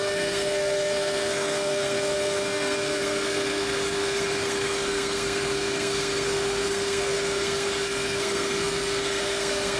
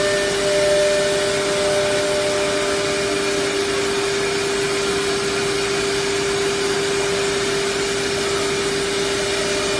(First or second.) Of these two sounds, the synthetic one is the first